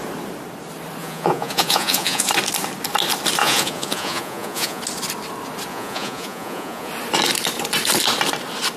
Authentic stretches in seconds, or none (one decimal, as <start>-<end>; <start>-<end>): 0.0-1.0; 2.3-3.4; 4.8-5.7; 6.9-8.8